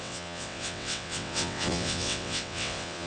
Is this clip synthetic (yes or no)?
yes